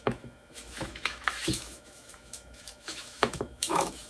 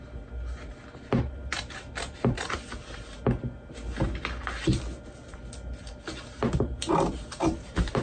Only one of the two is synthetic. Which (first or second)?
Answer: first